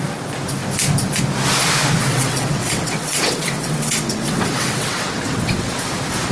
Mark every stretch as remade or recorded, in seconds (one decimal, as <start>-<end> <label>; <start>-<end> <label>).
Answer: 0.0-2.0 recorded; 2.0-5.8 remade; 5.8-6.3 recorded